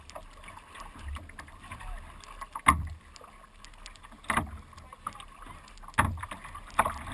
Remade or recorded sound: recorded